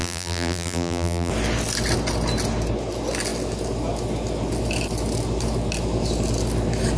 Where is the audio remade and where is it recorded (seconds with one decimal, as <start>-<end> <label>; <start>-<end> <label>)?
0.0-1.3 remade; 1.3-7.0 recorded